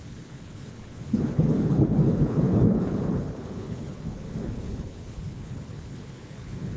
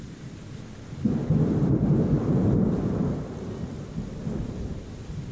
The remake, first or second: first